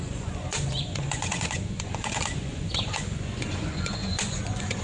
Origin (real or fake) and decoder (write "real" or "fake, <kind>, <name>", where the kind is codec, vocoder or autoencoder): fake, vocoder, Vocos